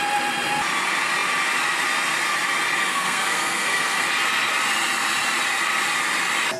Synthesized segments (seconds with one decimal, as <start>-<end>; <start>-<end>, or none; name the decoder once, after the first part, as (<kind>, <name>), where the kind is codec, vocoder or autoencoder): 2.8-4.0 (codec, SNAC)

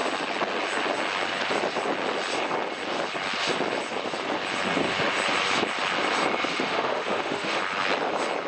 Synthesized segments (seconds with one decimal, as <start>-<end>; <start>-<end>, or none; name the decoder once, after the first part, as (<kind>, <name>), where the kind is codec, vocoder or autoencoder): 6.5-7.6 (autoencoder, DAC-VAE)

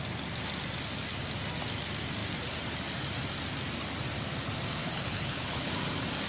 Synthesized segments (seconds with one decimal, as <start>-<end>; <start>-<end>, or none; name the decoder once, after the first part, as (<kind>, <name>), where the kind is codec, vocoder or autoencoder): 4.8-5.7 (codec, HILCodec)

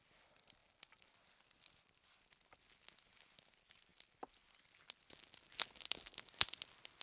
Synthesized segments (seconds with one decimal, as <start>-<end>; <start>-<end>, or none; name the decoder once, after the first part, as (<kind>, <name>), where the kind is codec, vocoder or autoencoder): none

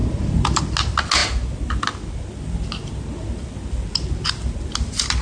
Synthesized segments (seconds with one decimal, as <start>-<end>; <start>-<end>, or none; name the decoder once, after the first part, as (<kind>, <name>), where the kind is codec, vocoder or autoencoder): none

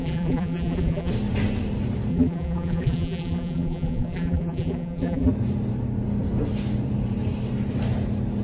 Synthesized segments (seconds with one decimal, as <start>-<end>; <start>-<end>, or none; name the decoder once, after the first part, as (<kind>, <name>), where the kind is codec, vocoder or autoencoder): 0.0-1.1 (vocoder, BigVGAN v2); 2.1-5.3

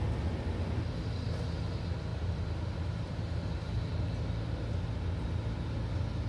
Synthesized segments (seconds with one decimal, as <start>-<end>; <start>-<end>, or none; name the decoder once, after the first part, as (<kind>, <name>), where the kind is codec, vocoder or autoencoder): none